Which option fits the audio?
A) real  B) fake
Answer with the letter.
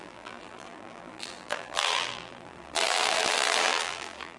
B